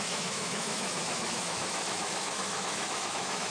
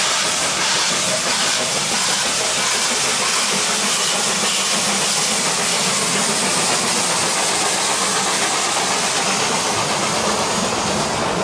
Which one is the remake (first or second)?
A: first